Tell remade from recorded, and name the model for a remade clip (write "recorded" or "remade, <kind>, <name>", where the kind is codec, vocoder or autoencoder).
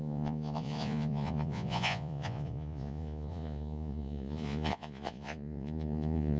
remade, vocoder, Vocos